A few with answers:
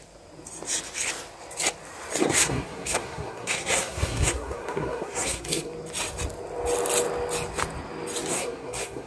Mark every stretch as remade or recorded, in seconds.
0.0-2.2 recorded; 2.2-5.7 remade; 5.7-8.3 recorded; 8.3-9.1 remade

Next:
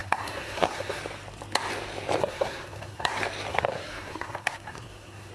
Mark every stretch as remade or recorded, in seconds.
0.0-1.0 remade; 1.0-2.2 recorded; 2.2-3.1 remade; 3.1-3.5 recorded; 3.5-5.3 remade